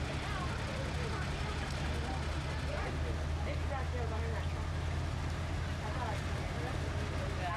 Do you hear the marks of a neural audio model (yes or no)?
no